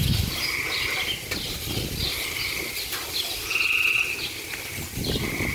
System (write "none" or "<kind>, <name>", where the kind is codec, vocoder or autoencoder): none